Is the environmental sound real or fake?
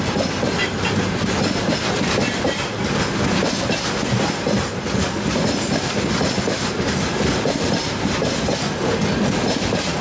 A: real